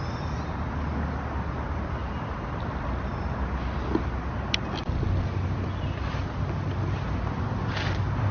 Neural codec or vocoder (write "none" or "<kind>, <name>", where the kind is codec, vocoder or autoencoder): none